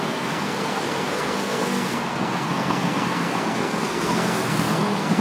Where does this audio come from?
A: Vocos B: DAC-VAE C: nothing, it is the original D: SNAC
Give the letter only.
D